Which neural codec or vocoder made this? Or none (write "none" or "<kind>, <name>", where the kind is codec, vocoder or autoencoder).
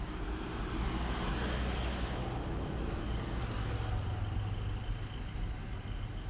none